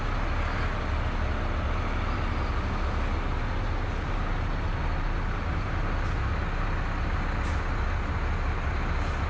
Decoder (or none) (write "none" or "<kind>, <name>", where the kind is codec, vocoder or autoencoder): none